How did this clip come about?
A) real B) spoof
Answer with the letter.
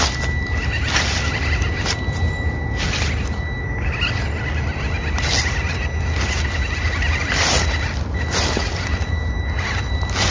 A